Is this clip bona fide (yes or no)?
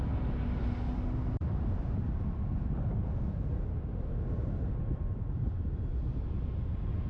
yes